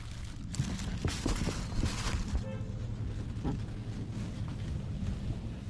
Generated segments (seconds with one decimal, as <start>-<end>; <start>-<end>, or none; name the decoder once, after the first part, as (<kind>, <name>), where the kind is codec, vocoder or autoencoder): none